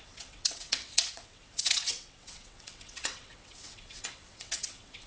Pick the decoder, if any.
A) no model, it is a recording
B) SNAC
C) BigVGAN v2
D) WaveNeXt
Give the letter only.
D